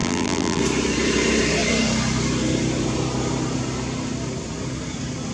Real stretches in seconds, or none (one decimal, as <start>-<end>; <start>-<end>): 0.6-5.3